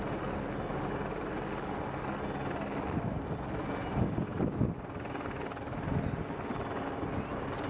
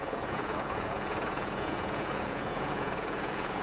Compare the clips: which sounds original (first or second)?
first